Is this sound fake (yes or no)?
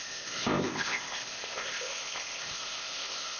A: yes